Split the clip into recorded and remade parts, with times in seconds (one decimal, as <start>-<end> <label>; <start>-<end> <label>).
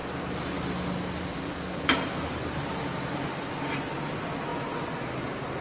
0.0-5.6 recorded